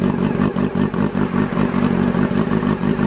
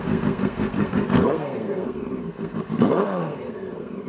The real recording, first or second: first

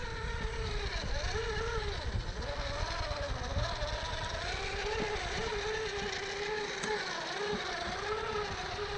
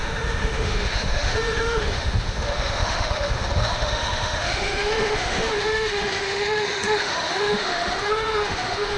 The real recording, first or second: first